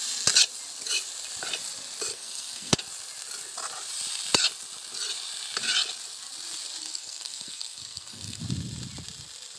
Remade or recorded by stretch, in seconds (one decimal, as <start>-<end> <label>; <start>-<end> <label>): 0.0-2.1 recorded; 2.1-2.8 remade; 2.8-6.8 recorded; 6.8-8.4 remade; 8.4-9.6 recorded